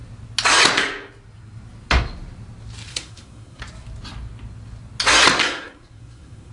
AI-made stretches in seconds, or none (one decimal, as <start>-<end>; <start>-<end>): 2.9-3.6; 5.4-6.5